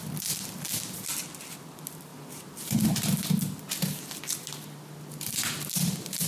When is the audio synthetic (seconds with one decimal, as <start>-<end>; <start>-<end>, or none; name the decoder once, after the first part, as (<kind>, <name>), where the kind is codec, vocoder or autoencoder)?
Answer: none